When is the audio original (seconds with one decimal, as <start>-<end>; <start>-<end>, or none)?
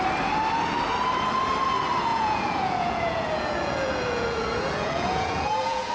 0.0-2.1